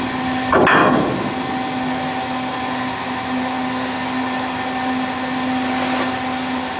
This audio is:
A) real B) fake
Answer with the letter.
A